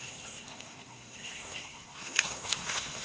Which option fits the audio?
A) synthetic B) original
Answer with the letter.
A